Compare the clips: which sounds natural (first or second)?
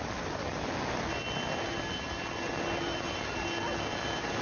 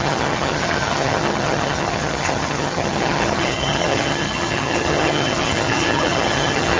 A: first